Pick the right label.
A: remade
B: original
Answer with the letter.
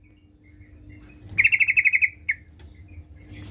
B